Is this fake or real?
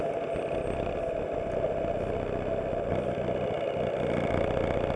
real